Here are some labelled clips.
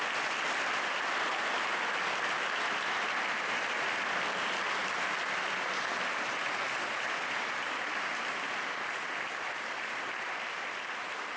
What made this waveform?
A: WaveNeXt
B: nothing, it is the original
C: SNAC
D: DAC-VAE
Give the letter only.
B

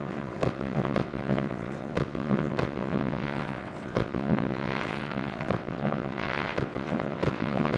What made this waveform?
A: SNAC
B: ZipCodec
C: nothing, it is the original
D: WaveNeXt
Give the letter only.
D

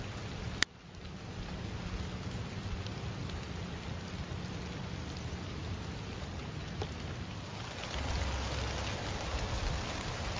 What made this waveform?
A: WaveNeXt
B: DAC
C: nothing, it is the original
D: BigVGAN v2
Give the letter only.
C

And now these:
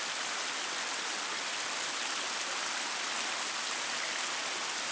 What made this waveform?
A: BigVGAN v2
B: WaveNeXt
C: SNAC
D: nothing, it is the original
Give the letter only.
D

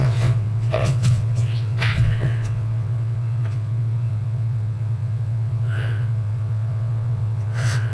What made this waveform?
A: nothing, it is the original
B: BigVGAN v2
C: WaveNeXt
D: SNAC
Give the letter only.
C